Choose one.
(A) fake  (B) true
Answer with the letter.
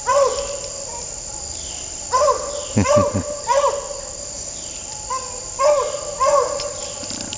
A